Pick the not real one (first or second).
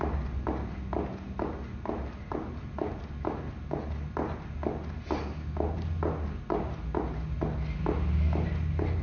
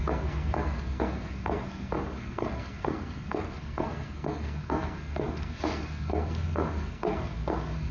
second